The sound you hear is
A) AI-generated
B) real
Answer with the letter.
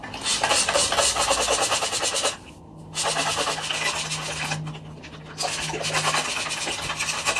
B